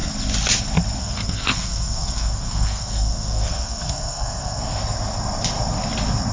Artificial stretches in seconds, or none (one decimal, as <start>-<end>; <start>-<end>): 1.0-4.8